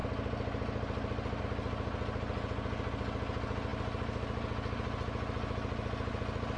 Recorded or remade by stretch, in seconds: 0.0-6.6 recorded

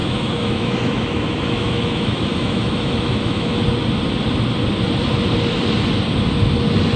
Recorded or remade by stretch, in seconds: 0.0-3.6 remade; 3.6-7.0 recorded

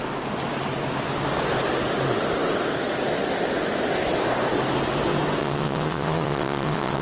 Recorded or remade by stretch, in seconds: 0.0-5.4 recorded; 5.4-7.0 remade

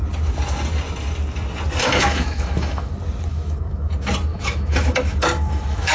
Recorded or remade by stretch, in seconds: 0.0-1.8 recorded; 1.8-2.9 remade; 2.9-3.3 recorded; 3.3-3.9 remade; 3.9-4.3 recorded; 4.3-5.9 remade